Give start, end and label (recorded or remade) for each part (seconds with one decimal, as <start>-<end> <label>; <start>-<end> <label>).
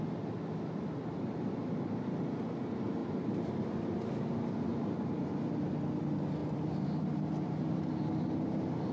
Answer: 0.0-3.0 recorded; 3.0-3.5 remade; 3.5-4.7 recorded; 4.7-5.3 remade; 5.3-6.4 recorded; 6.4-8.1 remade; 8.1-8.9 recorded